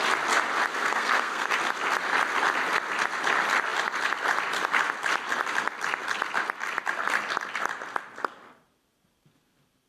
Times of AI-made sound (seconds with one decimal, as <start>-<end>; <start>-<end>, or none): 0.7-1.5